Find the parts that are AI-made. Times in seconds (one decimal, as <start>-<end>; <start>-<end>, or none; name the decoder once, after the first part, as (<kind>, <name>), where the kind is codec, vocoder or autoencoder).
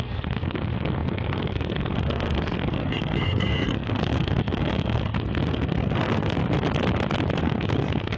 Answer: 0.0-6.4 (codec, SNAC); 7.4-8.2